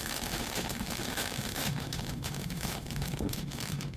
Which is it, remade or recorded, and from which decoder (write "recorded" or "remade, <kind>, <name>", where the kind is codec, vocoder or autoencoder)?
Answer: remade, autoencoder, DAC-VAE